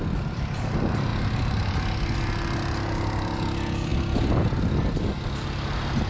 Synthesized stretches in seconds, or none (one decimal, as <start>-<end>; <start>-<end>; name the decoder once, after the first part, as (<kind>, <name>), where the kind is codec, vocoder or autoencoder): none